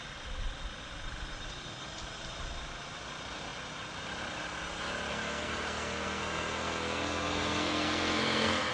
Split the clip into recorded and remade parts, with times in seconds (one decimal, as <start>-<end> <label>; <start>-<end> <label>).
0.0-5.1 recorded; 5.1-8.7 remade